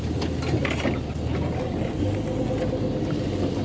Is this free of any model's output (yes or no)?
yes